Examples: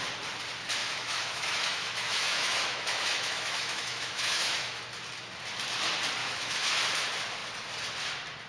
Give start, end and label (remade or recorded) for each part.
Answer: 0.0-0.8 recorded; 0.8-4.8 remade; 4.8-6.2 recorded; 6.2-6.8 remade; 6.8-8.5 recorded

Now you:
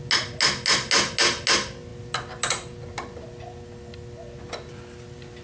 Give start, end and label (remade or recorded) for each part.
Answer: 0.0-5.4 recorded

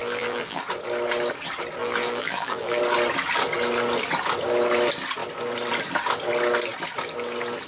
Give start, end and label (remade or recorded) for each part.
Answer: 0.0-0.6 remade; 0.6-1.8 recorded; 1.8-2.8 remade; 2.8-7.7 recorded

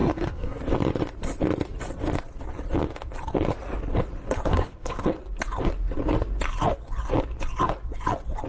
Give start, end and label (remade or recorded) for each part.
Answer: 0.0-0.6 remade; 0.6-4.5 recorded; 4.5-5.1 remade; 5.1-8.5 recorded

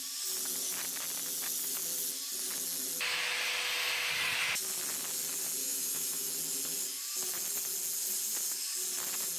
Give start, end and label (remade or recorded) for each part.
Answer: 0.0-5.6 recorded; 5.6-6.3 remade; 6.3-9.4 recorded

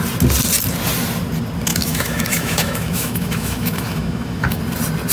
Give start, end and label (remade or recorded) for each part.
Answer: 0.0-1.7 recorded; 1.7-4.6 remade; 4.6-5.1 recorded